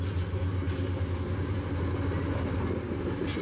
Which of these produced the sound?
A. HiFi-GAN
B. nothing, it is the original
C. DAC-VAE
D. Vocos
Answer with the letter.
B